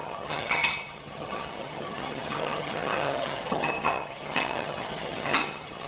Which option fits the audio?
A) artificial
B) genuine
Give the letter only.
A